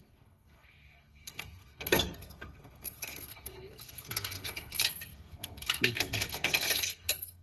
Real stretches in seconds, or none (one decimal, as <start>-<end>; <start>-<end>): none